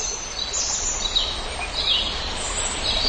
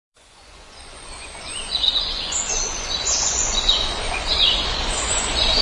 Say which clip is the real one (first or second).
first